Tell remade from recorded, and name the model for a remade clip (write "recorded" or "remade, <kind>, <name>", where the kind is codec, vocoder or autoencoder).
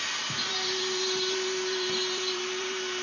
remade, vocoder, BigVGAN v2